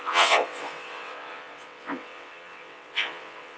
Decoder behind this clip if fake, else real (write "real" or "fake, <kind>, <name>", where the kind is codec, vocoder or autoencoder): fake, vocoder, WaveNeXt